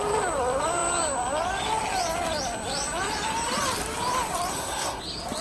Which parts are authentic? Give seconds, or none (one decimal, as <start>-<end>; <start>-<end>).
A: 0.0-4.5; 5.0-5.4